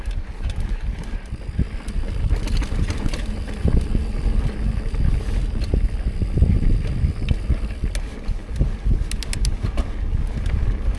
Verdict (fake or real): real